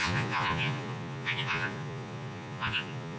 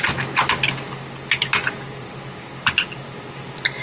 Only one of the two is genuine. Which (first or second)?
second